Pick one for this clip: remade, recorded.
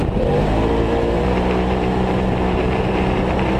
remade